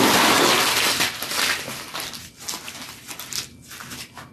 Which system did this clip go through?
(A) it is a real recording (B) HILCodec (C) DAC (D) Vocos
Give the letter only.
A